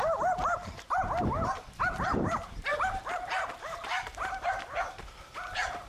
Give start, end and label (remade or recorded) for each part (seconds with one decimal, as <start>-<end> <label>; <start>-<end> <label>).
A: 0.0-5.9 remade